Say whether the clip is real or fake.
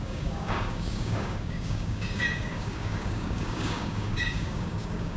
fake